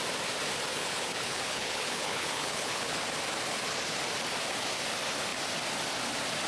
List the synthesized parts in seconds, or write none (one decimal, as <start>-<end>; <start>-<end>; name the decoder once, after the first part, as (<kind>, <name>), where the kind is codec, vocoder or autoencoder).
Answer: 0.7-3.1 (codec, HILCodec)